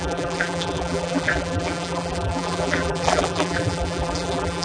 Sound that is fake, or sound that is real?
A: fake